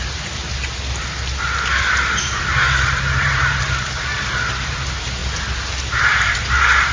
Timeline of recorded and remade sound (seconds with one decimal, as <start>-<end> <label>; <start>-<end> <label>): 0.0-0.4 remade; 0.4-2.2 recorded; 2.2-5.2 remade; 5.2-6.0 recorded; 6.0-6.9 remade